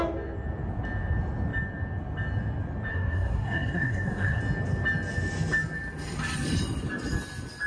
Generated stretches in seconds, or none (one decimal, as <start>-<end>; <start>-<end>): 2.9-4.4